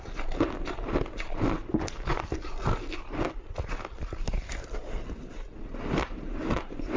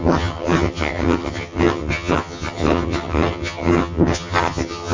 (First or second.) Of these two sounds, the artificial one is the second